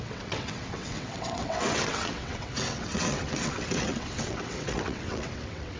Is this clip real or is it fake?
fake